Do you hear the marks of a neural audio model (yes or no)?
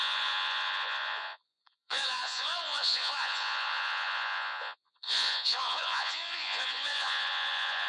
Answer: yes